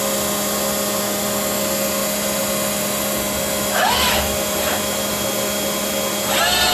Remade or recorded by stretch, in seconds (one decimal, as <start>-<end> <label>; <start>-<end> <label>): 0.0-6.7 recorded